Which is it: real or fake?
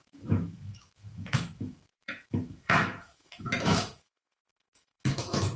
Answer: fake